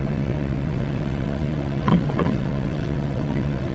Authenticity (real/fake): fake